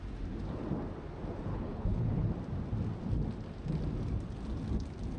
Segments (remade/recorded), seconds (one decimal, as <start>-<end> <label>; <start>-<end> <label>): 0.0-1.5 recorded; 1.5-2.3 remade; 2.3-5.2 recorded